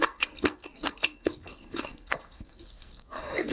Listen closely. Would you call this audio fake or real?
fake